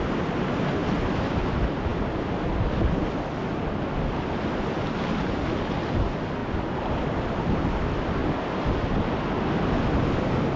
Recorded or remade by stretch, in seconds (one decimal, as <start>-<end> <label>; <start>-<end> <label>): 0.0-0.8 recorded; 0.8-1.4 remade; 1.4-6.4 recorded; 6.4-7.2 remade; 7.2-10.6 recorded